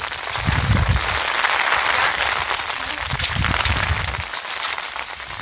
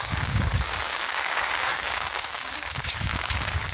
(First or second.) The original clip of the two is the first